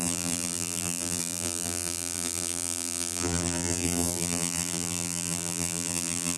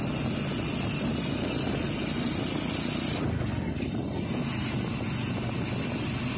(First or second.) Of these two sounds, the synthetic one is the first